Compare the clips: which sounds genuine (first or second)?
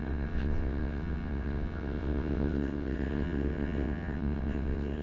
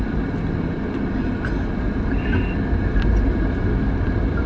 second